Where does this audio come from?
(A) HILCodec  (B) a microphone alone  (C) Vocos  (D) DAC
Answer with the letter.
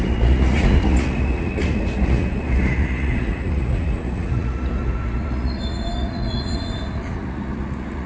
C